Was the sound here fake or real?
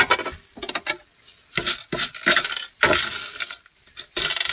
real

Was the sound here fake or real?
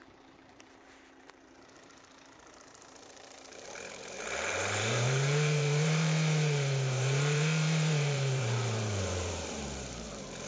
fake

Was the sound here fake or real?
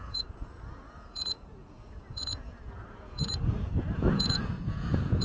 fake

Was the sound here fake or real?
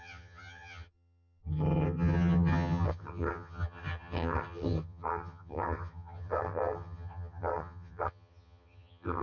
fake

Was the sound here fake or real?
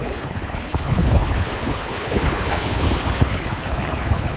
fake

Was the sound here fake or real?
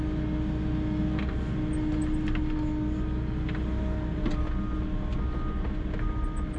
real